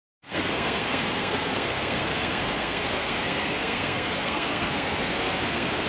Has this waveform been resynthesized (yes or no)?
yes